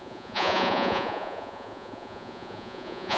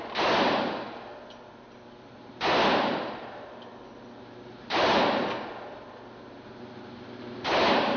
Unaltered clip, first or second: second